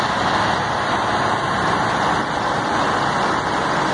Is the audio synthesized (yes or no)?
no